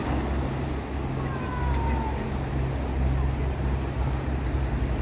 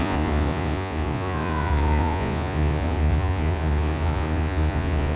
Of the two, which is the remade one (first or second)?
second